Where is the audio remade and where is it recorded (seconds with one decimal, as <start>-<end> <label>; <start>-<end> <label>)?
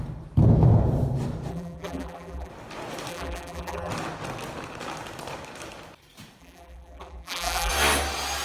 0.0-1.5 recorded; 1.5-2.5 remade; 2.5-3.1 recorded; 3.1-3.9 remade; 3.9-6.4 recorded; 6.4-7.7 remade; 7.7-8.4 recorded